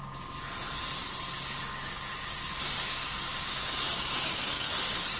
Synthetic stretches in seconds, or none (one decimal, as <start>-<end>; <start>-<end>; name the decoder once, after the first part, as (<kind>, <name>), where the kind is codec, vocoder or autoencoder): 1.7-2.5 (codec, DAC); 3.3-4.7